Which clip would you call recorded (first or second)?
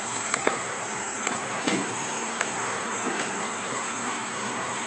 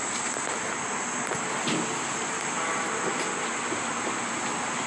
second